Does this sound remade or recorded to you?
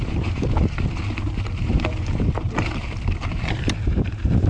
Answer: remade